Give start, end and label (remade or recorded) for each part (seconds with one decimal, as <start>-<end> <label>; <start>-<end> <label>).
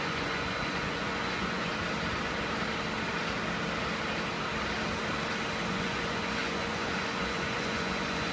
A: 0.0-1.7 remade; 1.7-5.7 recorded; 5.7-8.3 remade